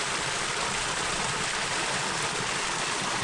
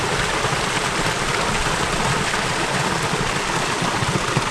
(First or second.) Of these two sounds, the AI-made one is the second